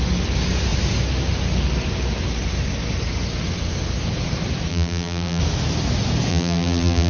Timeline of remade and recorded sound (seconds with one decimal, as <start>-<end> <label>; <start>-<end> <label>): 0.0-4.7 recorded; 4.7-5.4 remade; 5.4-6.3 recorded; 6.3-7.1 remade